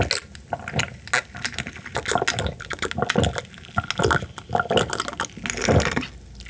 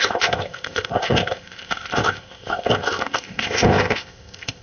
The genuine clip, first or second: first